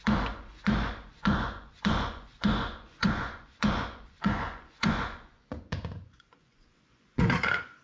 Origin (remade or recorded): remade